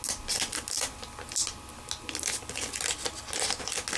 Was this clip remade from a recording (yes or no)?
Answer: no